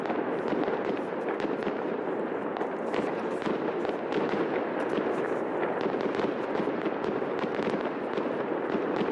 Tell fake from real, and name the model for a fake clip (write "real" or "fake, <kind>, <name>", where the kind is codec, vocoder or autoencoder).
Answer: real